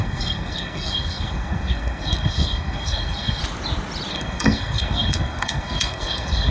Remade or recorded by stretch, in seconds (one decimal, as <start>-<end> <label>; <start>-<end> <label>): 0.0-3.4 remade; 3.4-4.1 recorded; 4.1-6.5 remade